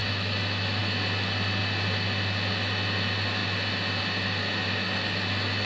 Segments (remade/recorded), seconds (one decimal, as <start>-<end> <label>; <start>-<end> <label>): 0.0-0.8 remade; 0.8-4.4 recorded; 4.4-5.7 remade